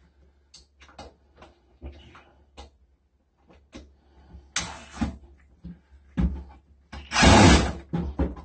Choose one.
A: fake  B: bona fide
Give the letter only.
B